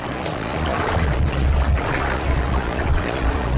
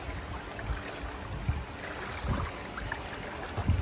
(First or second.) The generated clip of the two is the first